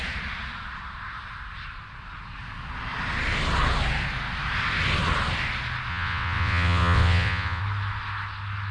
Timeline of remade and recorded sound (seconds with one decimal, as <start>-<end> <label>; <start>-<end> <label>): 0.0-5.9 recorded; 5.9-7.6 remade; 7.6-8.7 recorded